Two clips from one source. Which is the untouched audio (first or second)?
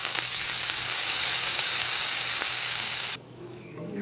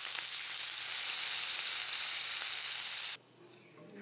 second